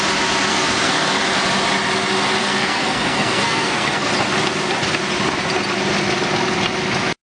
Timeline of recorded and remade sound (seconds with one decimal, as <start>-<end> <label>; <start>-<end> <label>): 0.0-0.5 recorded; 0.5-1.2 remade; 1.2-2.4 recorded; 2.4-4.1 remade; 4.1-7.3 recorded